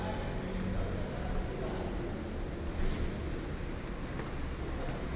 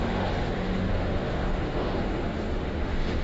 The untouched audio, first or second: first